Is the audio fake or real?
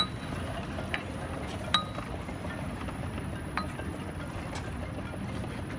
real